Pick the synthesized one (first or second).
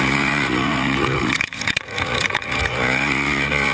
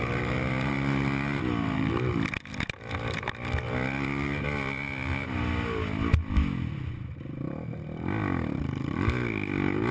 first